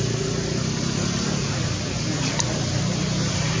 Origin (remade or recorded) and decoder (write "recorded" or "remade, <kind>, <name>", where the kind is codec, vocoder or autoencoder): recorded